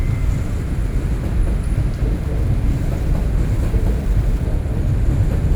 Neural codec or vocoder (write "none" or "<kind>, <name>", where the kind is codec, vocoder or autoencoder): none